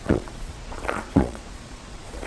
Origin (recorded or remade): remade